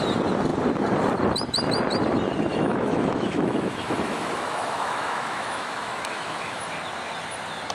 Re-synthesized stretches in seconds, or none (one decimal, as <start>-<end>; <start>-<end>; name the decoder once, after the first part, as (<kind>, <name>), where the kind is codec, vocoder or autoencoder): 2.5-6.6 (autoencoder, DAC-VAE)